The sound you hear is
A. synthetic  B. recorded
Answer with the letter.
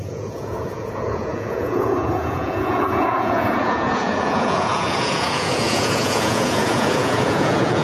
A